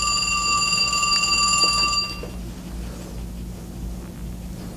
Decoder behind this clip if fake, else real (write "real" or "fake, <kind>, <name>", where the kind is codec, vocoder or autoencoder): real